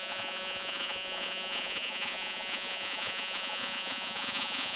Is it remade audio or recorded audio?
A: remade